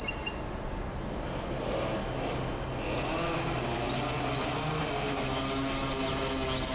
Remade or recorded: recorded